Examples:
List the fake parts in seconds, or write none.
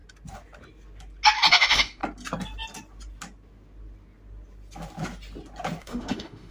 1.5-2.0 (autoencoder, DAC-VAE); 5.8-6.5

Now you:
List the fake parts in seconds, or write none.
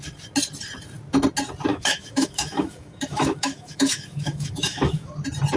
1.7-5.1 (autoencoder, DAC-VAE)